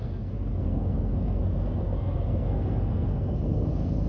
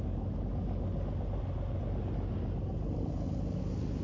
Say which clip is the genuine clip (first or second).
second